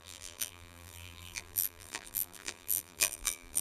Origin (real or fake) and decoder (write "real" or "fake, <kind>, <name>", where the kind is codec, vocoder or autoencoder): fake, vocoder, BigVGAN v2